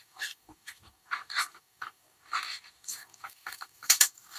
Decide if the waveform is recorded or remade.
remade